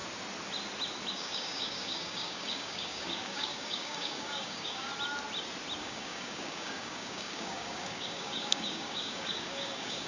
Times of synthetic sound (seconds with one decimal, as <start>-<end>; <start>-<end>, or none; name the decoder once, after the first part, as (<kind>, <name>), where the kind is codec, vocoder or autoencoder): 1.1-4.9 (codec, DAC); 5.8-10.1